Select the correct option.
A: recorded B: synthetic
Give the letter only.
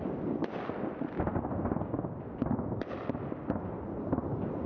B